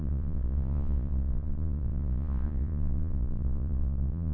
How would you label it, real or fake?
fake